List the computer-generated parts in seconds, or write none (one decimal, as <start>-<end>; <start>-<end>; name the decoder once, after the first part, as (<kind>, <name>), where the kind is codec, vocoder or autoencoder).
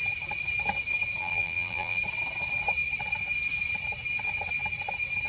1.2-2.0 (vocoder, BigVGAN v2)